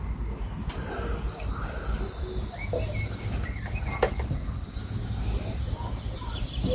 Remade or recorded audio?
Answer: recorded